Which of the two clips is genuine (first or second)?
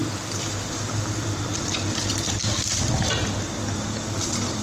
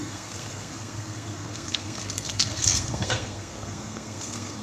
first